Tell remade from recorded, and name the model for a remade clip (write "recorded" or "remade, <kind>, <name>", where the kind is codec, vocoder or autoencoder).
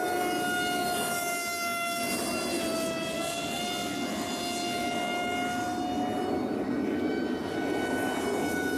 recorded